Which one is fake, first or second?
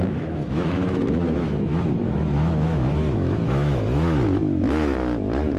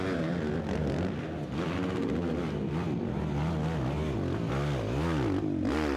first